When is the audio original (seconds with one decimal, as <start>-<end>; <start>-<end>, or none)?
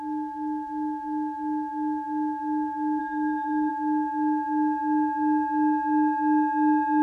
0.0-3.0; 3.7-7.0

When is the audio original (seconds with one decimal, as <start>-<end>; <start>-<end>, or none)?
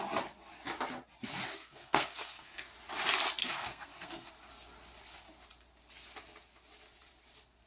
0.0-1.5; 2.6-3.4; 4.3-7.7